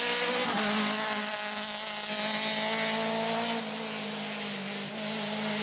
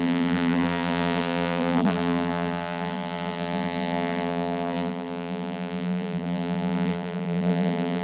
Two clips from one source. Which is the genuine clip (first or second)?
first